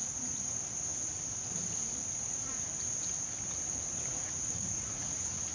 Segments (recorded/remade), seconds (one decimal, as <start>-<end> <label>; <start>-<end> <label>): 0.0-0.5 remade; 0.5-4.1 recorded; 4.1-5.5 remade